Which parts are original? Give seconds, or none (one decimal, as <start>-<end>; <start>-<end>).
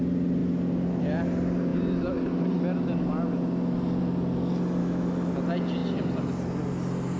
0.0-4.8; 5.3-7.2